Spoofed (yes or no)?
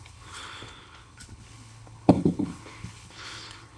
yes